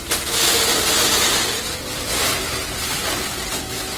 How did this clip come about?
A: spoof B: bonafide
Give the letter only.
B